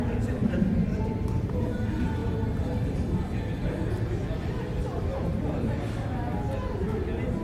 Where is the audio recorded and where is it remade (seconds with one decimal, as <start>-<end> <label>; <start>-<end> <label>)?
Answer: 0.0-0.4 recorded; 0.4-1.8 remade; 1.8-7.4 recorded